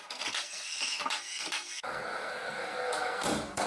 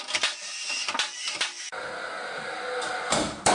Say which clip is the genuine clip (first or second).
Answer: second